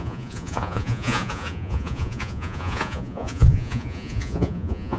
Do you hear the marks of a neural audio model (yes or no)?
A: yes